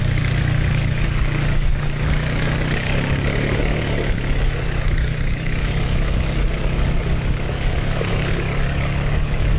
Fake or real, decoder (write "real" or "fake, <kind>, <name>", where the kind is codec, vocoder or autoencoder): fake, codec, DAC